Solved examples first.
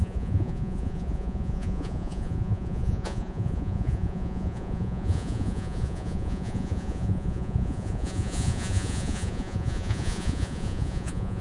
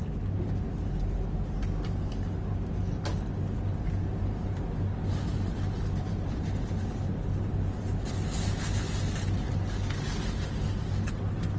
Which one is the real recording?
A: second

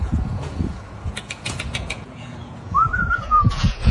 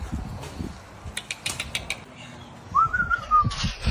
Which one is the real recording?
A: second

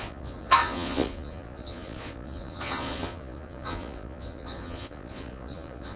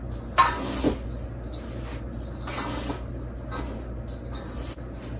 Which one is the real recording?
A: second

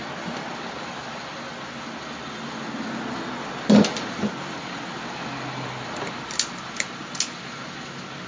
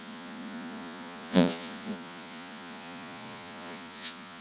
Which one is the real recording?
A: first